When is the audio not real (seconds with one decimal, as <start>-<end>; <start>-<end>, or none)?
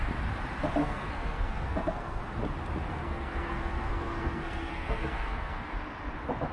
0.8-2.2; 2.9-5.7